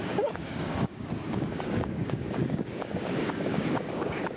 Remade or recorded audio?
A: remade